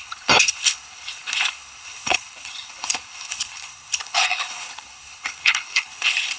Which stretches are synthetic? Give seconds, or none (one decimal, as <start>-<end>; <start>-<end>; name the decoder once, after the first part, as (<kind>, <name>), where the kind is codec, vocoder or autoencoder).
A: 0.0-6.4 (codec, HILCodec)